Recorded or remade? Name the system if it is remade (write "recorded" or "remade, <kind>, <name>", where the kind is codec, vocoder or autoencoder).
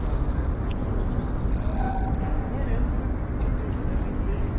recorded